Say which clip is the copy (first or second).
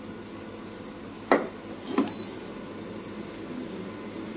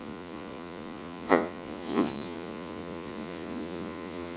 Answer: second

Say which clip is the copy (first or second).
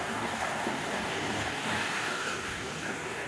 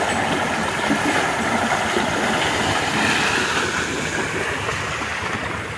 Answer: first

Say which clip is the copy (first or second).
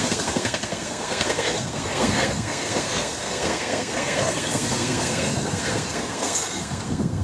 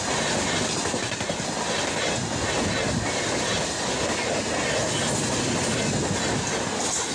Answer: first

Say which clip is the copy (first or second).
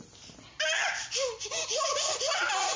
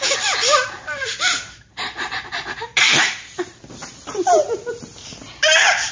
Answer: second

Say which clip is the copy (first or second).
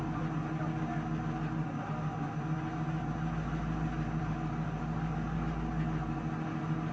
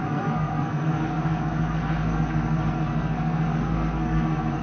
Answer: second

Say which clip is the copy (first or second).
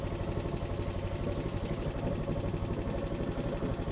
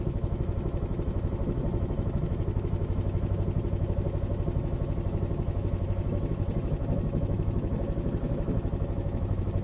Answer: second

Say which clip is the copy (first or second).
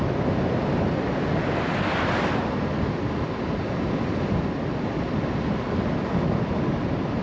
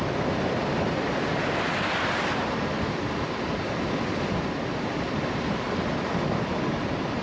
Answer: second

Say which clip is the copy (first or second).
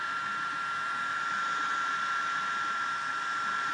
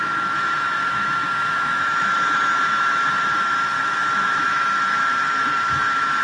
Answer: second